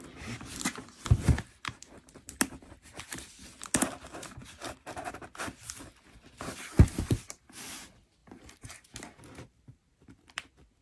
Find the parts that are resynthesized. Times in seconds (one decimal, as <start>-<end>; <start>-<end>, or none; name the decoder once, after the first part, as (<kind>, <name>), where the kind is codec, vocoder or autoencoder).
4.4-5.2 (vocoder, BigVGAN v2); 8.2-9.8